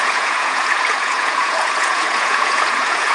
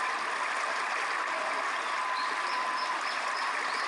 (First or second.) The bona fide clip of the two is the second